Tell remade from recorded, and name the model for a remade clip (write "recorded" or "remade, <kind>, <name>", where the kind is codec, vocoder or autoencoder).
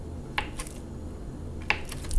recorded